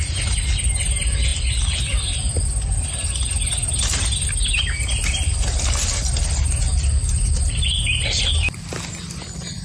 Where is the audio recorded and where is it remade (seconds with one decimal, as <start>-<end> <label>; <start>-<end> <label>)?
0.0-9.6 recorded